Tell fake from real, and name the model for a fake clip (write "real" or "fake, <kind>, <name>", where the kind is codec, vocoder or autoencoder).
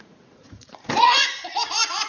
fake, vocoder, Vocos